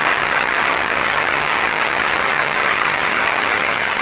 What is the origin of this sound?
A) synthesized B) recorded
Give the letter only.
A